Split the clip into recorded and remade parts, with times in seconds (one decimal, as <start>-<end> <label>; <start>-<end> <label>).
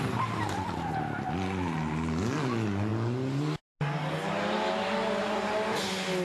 0.0-6.2 recorded